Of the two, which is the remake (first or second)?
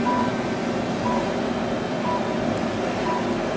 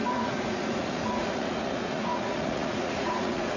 second